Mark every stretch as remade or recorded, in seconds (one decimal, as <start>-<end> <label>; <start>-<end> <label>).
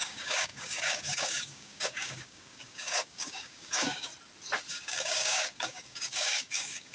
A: 0.0-4.1 remade; 4.1-4.7 recorded; 4.7-6.9 remade